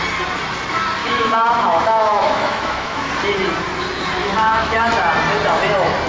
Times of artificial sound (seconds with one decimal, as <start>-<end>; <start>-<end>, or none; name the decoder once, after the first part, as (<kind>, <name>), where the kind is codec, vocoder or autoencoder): 1.0-3.1 (autoencoder, DAC-VAE); 4.2-4.8